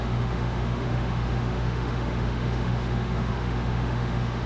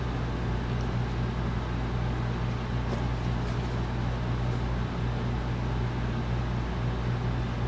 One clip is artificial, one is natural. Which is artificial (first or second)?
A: first